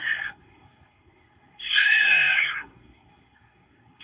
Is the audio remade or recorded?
remade